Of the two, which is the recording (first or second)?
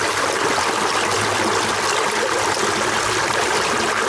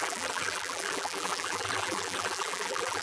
first